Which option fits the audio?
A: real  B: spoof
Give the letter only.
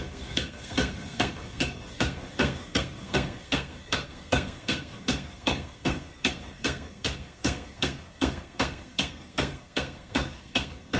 B